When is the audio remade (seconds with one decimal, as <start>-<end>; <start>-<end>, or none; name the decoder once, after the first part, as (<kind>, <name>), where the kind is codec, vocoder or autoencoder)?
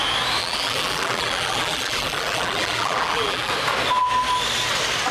0.4-3.5 (vocoder, BigVGAN v2)